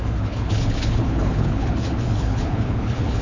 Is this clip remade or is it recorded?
remade